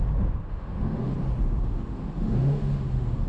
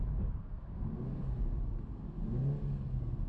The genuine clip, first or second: second